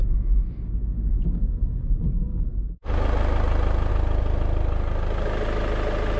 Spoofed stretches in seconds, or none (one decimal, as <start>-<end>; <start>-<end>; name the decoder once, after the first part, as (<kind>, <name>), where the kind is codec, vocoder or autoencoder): none

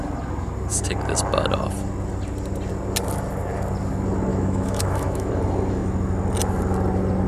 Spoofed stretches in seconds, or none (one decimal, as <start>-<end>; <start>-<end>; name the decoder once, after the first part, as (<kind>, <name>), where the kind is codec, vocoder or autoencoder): 4.3-5.3 (autoencoder, DAC-VAE)

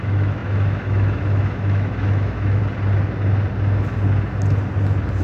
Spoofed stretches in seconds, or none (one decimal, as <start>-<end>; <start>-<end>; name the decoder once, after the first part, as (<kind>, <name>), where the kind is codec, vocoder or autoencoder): 0.0-2.6 (autoencoder, DAC-VAE)